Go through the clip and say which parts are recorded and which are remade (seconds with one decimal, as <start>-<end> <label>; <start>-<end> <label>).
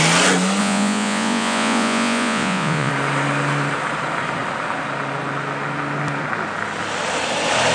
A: 0.0-0.6 recorded; 0.6-2.9 remade; 2.9-7.7 recorded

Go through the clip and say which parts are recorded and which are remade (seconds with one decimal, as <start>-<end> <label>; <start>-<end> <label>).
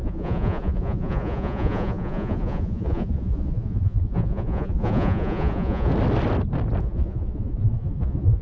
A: 0.0-5.9 remade; 5.9-6.8 recorded; 6.8-8.4 remade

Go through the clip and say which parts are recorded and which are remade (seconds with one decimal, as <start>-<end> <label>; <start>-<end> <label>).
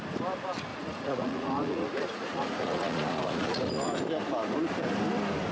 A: 0.0-0.7 recorded; 0.7-4.0 remade; 4.0-5.5 recorded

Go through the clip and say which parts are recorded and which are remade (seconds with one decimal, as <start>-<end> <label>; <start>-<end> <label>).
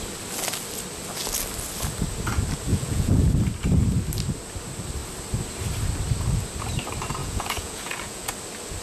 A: 0.0-2.7 recorded; 2.7-3.2 remade; 3.2-7.2 recorded; 7.2-8.3 remade; 8.3-8.8 recorded